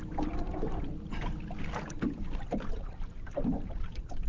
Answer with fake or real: real